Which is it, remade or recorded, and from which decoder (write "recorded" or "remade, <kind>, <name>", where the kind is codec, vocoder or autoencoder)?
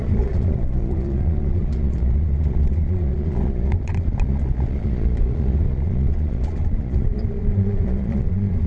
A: remade, vocoder, Vocos